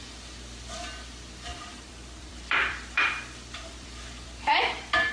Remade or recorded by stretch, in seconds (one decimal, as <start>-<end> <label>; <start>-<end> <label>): 0.0-1.5 recorded; 1.5-4.6 remade; 4.6-5.1 recorded